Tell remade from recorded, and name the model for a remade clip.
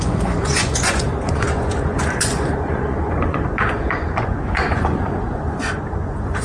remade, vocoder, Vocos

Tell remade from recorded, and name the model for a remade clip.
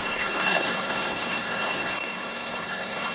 remade, codec, SNAC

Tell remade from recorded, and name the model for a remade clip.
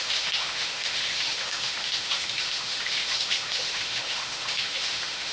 remade, autoencoder, DAC-VAE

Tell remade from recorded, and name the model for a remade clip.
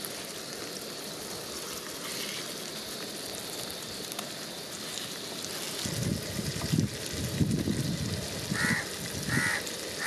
recorded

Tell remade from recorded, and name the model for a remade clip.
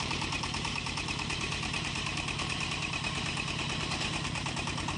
remade, vocoder, BigVGAN v2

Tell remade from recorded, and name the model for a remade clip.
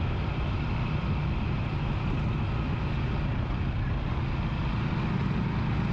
recorded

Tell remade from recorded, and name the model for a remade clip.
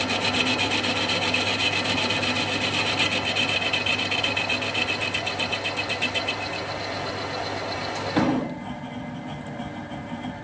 recorded